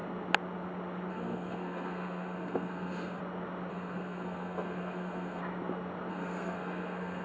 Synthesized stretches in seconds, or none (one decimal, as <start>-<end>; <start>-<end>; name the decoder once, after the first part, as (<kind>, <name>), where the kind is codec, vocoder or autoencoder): 1.1-3.2 (codec, SNAC); 3.7-5.4; 6.1-7.2